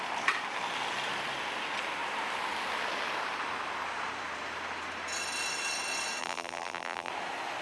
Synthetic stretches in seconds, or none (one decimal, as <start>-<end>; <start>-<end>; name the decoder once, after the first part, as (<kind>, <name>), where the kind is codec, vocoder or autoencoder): 6.2-7.1 (vocoder, BigVGAN v2)